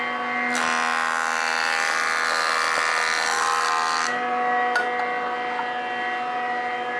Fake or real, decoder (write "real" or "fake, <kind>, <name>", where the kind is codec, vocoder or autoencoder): real